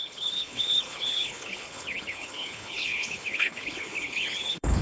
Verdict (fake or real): fake